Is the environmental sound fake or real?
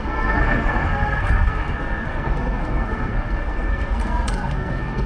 fake